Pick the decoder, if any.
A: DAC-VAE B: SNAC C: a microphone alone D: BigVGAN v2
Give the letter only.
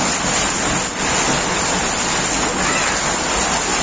C